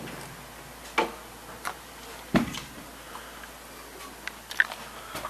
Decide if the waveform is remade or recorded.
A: recorded